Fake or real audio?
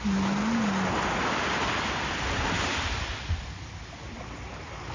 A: real